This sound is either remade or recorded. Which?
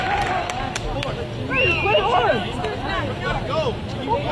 recorded